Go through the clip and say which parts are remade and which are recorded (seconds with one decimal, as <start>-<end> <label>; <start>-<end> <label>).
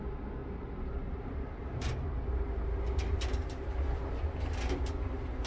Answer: 0.0-0.4 recorded; 0.4-3.7 remade; 3.7-5.5 recorded